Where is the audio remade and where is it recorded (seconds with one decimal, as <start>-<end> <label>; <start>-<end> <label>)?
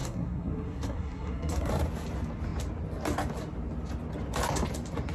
0.0-1.7 remade; 1.7-5.1 recorded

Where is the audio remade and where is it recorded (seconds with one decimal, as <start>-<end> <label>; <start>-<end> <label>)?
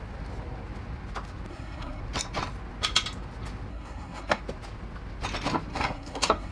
0.0-1.5 recorded; 1.5-2.0 remade; 2.0-3.7 recorded; 3.7-4.4 remade; 4.4-5.7 recorded; 5.7-6.5 remade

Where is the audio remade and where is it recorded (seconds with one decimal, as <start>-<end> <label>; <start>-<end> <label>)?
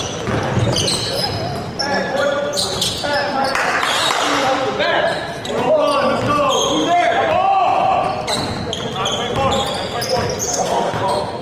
0.0-10.5 recorded; 10.5-11.0 remade; 11.0-11.4 recorded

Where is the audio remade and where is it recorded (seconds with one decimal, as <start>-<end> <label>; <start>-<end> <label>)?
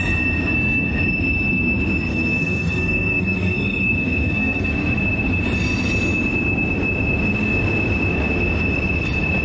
0.0-2.1 recorded; 2.1-5.0 remade; 5.0-9.4 recorded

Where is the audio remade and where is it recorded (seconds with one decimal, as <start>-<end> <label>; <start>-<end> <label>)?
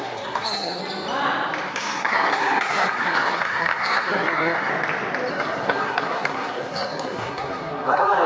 0.0-0.8 remade; 0.8-1.7 recorded; 1.7-4.7 remade; 4.7-5.3 recorded; 5.3-8.3 remade